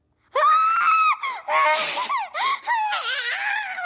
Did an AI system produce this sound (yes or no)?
no